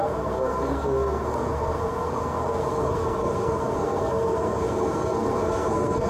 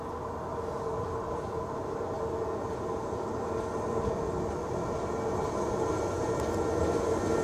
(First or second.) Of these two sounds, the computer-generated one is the first